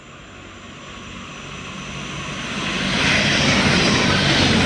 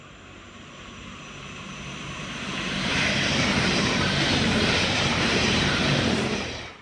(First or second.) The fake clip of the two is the second